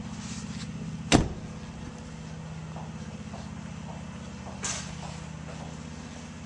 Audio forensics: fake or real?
real